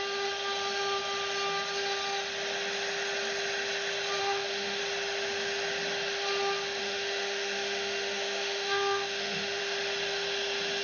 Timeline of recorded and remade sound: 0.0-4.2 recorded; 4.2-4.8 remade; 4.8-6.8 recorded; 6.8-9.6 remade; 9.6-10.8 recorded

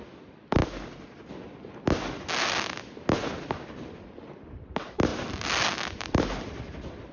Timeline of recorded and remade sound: 0.0-7.1 recorded

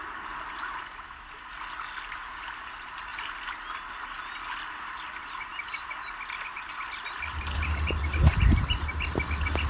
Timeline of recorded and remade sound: 0.0-1.5 remade; 1.5-5.5 recorded; 5.5-7.4 remade; 7.4-9.7 recorded

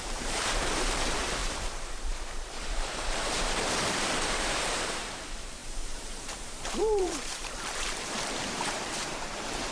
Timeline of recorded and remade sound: 0.0-9.7 remade

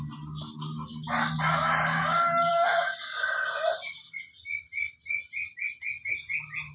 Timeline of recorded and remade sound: 0.0-6.7 recorded

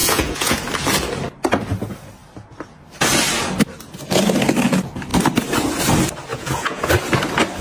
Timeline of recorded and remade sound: 0.0-0.6 remade; 0.6-6.3 recorded; 6.3-6.9 remade; 6.9-7.6 recorded

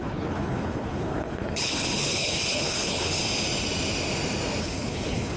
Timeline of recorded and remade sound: 0.0-3.2 remade; 3.2-4.6 recorded; 4.6-5.4 remade

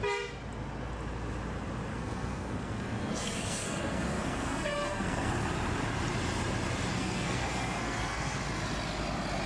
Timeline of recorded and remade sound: 0.0-1.9 recorded; 1.9-5.3 remade; 5.3-6.9 recorded; 6.9-8.4 remade; 8.4-9.5 recorded